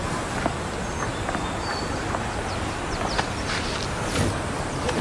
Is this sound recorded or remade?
recorded